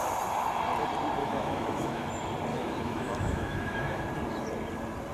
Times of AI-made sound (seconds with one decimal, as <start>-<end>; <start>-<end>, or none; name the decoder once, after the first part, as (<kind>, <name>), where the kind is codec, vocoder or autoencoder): 1.2-2.1 (autoencoder, DAC-VAE); 2.5-4.0